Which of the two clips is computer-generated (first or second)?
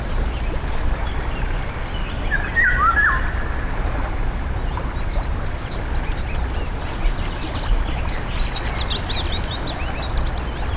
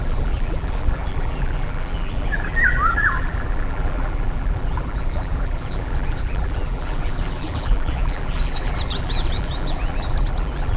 second